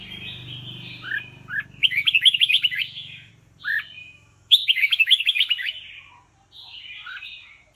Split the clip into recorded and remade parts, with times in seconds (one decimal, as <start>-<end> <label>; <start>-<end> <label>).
0.0-1.8 recorded; 1.8-3.3 remade; 3.3-4.0 recorded; 4.0-5.8 remade; 5.8-7.7 recorded